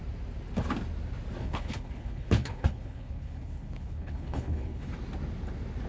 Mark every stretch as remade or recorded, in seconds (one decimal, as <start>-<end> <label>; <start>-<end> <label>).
0.0-1.4 recorded; 1.4-4.9 remade; 4.9-5.9 recorded